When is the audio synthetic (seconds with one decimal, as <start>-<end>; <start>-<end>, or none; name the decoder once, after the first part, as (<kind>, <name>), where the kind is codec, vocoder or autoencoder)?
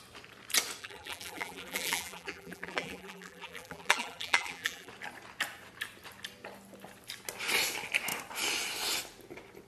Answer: 0.8-4.9 (vocoder, BigVGAN v2)